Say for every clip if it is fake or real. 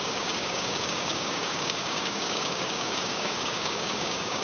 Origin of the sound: fake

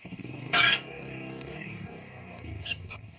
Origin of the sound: fake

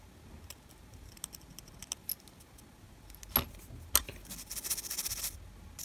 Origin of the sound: real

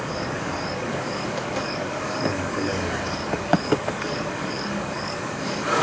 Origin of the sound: fake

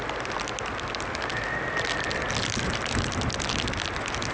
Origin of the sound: real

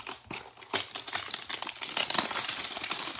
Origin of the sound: real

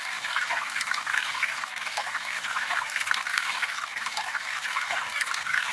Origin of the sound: fake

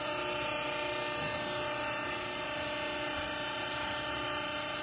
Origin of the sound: real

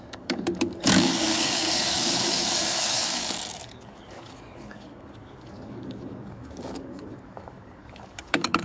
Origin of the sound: fake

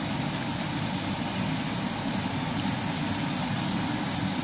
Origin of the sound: real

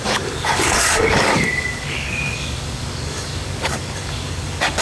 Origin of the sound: fake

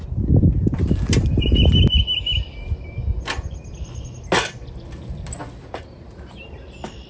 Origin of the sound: real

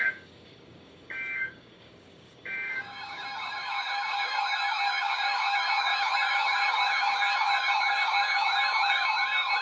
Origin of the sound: fake